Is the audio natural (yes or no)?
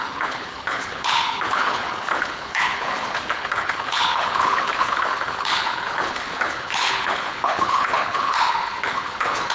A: no